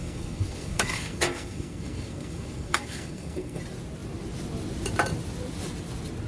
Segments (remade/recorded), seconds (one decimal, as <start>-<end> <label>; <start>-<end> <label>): 0.0-3.6 remade; 3.6-6.3 recorded